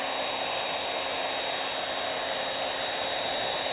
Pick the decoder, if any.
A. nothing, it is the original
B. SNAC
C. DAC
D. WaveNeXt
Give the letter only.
A